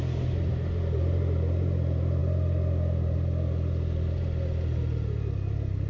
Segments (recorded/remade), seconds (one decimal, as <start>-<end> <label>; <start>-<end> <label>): 0.0-5.9 recorded